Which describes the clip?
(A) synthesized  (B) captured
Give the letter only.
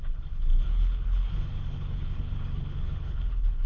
A